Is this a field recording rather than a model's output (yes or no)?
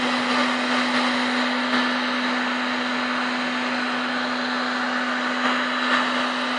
yes